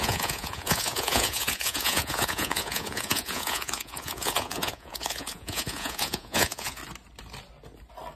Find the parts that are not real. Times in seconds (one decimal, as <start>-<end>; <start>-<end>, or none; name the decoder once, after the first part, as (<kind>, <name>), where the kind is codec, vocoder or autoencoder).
0.0-6.8 (vocoder, Vocos)